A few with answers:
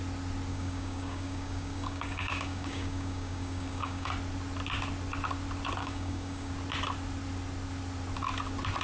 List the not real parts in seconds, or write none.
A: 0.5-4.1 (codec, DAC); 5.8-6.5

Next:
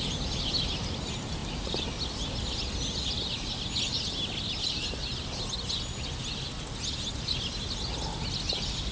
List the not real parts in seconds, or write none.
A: none

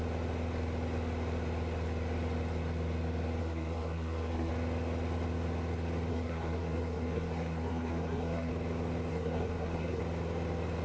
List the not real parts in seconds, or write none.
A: 3.4-4.5 (codec, SNAC); 6.1-8.5; 9.1-10.0

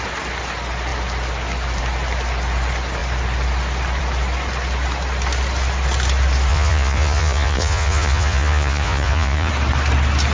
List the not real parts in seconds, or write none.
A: 6.5-9.5 (vocoder, Vocos)

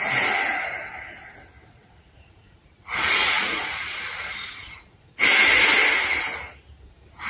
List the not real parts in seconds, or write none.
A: 1.8-5.1 (vocoder, Vocos)